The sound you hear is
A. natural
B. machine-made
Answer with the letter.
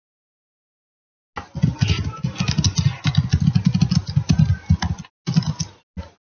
A